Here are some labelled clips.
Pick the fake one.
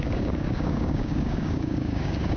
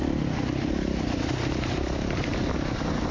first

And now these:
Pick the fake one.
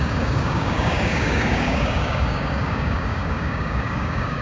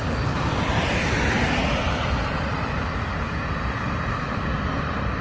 first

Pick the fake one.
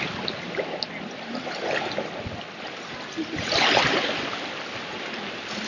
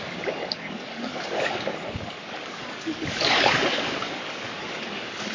second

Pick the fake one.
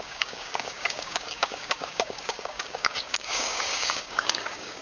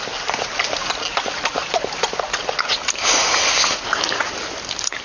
first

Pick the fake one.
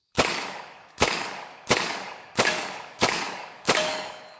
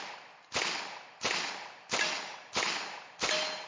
first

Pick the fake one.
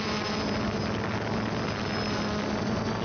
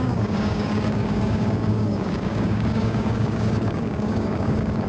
second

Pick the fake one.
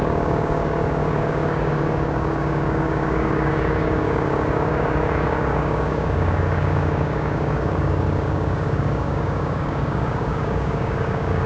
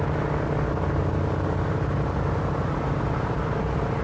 first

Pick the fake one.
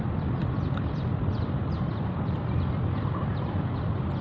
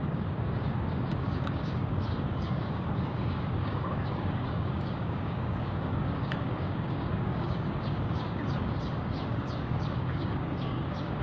second